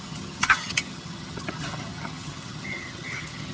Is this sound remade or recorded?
remade